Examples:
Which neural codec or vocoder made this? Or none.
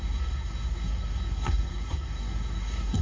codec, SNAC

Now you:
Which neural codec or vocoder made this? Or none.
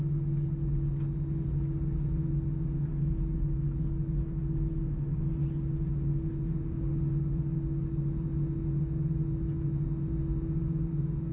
none